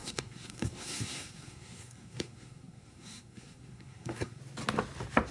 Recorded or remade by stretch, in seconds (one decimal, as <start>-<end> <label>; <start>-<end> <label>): 0.0-4.4 remade; 4.4-5.3 recorded